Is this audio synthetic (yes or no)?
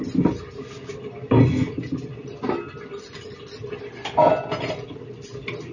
no